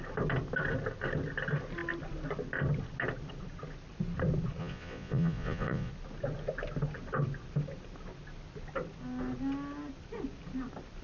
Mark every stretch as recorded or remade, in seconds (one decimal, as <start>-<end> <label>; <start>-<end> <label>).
0.0-4.6 recorded; 4.6-5.9 remade; 5.9-11.0 recorded

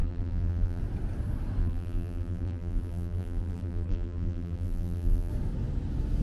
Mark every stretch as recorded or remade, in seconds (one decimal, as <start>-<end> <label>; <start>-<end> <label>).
0.0-0.8 remade; 0.8-1.6 recorded; 1.6-5.3 remade; 5.3-6.2 recorded

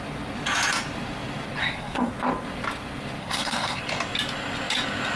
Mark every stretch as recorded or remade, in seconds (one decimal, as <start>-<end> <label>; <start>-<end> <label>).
0.0-1.6 recorded; 1.6-2.1 remade; 2.1-3.2 recorded; 3.2-3.8 remade; 3.8-5.2 recorded

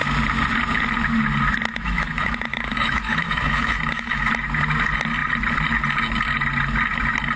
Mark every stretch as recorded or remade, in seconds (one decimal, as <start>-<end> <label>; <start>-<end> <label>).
0.0-1.7 recorded; 1.7-4.3 remade; 4.3-7.4 recorded

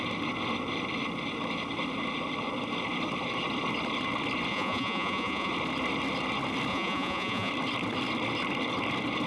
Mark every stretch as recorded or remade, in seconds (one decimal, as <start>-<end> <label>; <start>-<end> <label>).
0.0-4.5 recorded; 4.5-5.5 remade; 5.5-6.7 recorded; 6.7-7.5 remade; 7.5-9.3 recorded

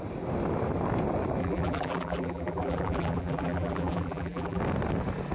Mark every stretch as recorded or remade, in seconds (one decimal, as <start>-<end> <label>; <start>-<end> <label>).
0.0-1.4 recorded; 1.4-4.6 remade; 4.6-5.3 recorded

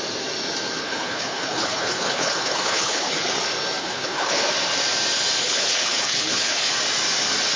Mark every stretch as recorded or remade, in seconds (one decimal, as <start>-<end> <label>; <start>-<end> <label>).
0.0-0.8 recorded; 0.8-3.4 remade; 3.4-3.8 recorded; 3.8-4.5 remade; 4.5-5.4 recorded; 5.4-6.7 remade; 6.7-7.6 recorded